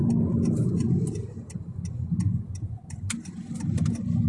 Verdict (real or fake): real